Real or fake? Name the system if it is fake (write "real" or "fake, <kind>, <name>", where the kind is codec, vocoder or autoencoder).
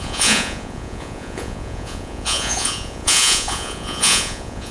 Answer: fake, vocoder, Vocos